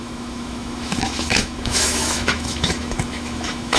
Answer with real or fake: fake